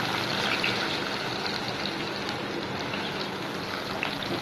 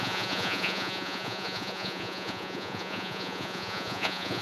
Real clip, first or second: first